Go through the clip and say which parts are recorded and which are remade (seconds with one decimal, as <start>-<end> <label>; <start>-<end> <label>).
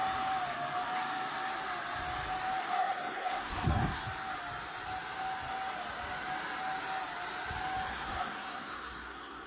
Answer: 0.0-2.6 recorded; 2.6-4.0 remade; 4.0-7.9 recorded; 7.9-9.5 remade